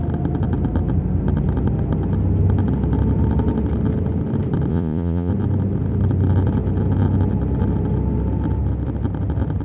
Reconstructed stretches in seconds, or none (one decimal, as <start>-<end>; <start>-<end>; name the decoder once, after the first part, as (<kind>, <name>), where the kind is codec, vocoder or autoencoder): 4.7-5.3 (vocoder, Vocos)